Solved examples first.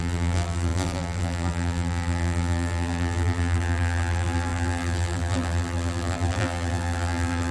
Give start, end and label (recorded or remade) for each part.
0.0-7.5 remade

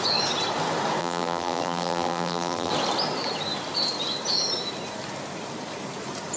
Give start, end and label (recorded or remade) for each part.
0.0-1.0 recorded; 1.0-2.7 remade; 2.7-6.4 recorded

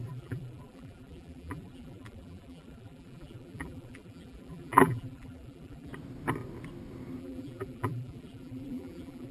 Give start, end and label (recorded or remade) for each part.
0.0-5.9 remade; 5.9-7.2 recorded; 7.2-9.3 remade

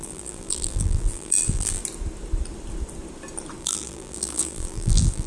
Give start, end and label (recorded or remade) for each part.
0.0-1.8 remade; 1.8-3.6 recorded; 3.6-5.3 remade